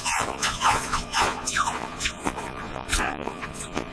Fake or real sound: fake